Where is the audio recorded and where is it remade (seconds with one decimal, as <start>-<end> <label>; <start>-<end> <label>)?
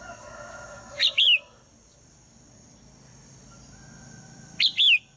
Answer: 0.0-5.2 recorded